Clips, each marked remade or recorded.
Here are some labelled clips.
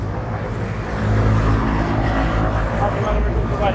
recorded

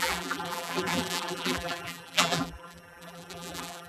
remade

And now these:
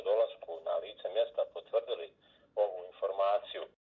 recorded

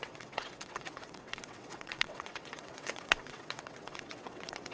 remade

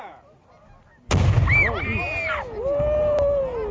recorded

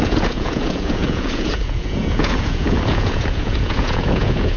remade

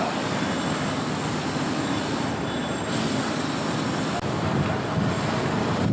recorded